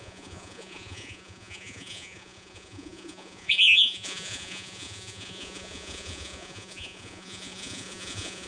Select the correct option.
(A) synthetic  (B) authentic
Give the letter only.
A